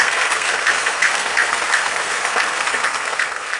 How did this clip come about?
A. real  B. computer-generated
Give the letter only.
B